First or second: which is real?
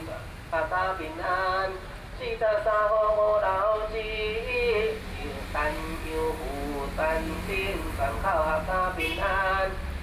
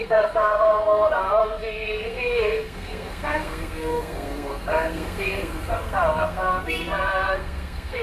first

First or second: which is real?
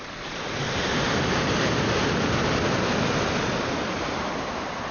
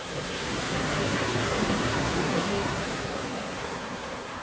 first